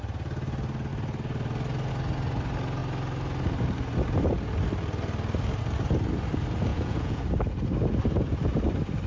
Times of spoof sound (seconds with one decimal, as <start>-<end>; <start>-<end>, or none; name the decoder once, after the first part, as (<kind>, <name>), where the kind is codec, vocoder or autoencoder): 6.7-7.2 (vocoder, Vocos)